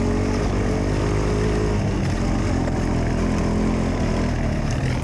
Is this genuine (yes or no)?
yes